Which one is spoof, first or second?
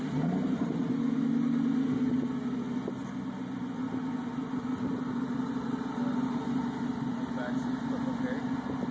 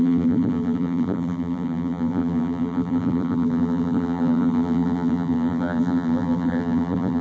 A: second